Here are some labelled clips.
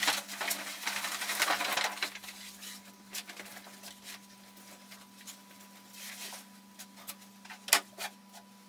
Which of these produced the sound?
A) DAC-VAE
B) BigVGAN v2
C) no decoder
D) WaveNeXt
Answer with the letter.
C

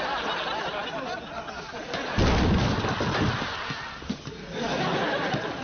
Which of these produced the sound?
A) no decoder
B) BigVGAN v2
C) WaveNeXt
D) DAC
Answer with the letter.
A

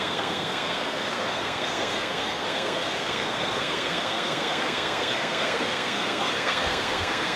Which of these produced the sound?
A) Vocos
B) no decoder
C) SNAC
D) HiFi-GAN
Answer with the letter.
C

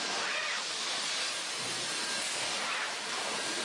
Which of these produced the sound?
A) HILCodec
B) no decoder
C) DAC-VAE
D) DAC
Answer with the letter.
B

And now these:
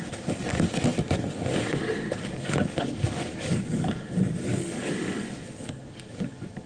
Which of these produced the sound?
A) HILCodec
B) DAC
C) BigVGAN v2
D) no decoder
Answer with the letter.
B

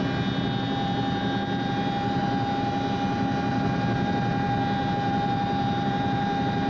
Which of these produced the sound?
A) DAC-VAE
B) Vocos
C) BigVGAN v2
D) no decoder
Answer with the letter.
D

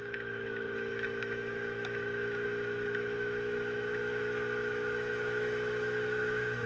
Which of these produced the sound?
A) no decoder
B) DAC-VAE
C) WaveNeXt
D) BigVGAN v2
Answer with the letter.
B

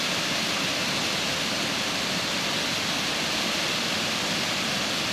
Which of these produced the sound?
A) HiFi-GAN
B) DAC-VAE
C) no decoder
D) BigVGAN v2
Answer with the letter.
C